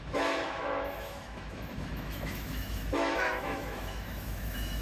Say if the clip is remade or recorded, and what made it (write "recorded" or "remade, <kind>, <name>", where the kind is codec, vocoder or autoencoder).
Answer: remade, autoencoder, DAC-VAE